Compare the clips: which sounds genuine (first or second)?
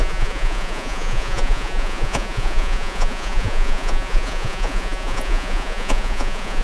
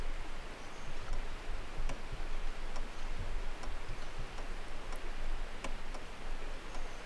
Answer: second